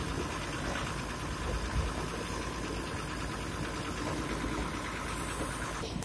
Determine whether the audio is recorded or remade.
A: recorded